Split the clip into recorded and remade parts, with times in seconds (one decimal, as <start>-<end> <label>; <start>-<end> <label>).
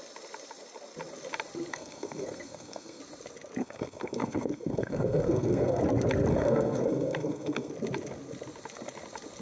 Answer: 0.0-1.7 recorded; 1.7-3.0 remade; 3.0-3.6 recorded; 3.6-5.8 remade; 5.8-6.3 recorded; 6.3-7.7 remade; 7.7-9.4 recorded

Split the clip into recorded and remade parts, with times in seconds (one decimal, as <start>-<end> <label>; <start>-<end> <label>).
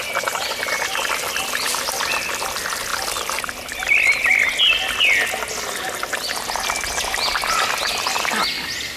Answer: 0.0-9.0 recorded